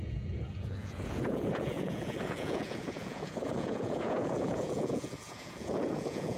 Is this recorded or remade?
remade